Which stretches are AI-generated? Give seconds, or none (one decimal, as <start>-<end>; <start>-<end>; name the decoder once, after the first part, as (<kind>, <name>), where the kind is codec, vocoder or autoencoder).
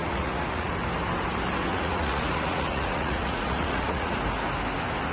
0.0-0.7 (vocoder, Vocos); 1.7-4.2